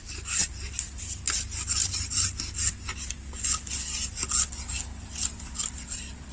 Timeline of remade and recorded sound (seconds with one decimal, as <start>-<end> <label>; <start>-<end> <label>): 0.0-6.3 recorded